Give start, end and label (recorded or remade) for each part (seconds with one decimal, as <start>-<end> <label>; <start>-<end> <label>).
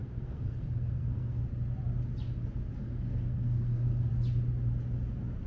0.0-1.4 remade; 1.4-2.8 recorded; 2.8-4.1 remade; 4.1-5.5 recorded